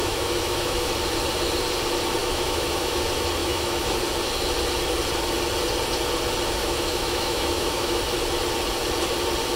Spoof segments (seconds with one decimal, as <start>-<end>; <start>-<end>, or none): 0.0-0.9; 2.2-3.0; 3.4-3.9; 6.6-8.0